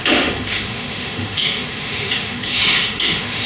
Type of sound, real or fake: fake